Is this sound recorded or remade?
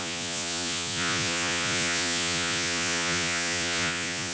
remade